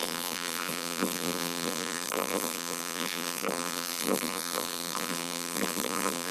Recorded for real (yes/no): no